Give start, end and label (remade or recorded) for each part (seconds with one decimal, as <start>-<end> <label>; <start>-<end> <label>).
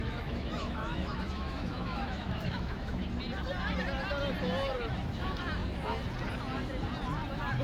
0.0-3.0 remade; 3.0-7.6 recorded